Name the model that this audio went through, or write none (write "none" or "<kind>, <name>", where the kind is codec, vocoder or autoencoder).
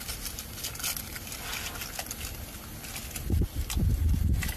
none